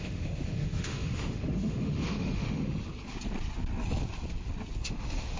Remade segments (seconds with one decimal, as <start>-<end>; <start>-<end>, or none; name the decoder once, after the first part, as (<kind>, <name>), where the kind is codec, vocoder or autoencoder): 0.0-2.9 (autoencoder, DAC-VAE); 4.8-5.4